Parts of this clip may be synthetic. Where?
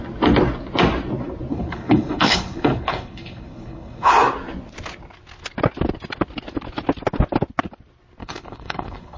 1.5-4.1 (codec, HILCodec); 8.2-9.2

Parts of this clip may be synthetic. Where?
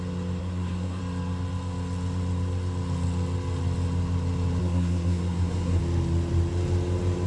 0.4-1.0 (codec, SNAC); 4.6-5.8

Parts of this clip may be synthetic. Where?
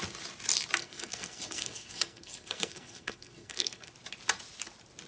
0.8-3.9 (codec, SNAC)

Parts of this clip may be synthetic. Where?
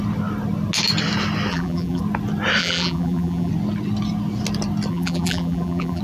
1.5-2.0 (vocoder, BigVGAN v2); 2.6-3.5; 4.9-6.0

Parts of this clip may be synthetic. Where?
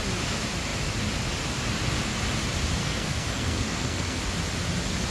2.8-4.2 (codec, SNAC)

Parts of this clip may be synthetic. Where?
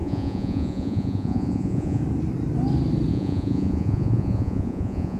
0.0-2.0 (vocoder, Vocos); 3.1-5.2